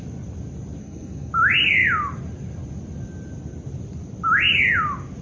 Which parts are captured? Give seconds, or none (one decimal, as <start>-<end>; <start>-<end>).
0.0-0.8; 1.3-5.2